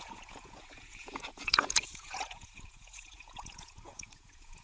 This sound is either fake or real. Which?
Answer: fake